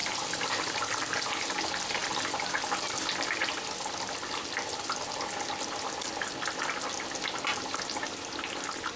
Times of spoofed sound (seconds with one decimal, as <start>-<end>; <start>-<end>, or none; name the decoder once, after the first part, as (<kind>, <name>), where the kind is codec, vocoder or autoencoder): 0.0-1.5 (vocoder, BigVGAN v2)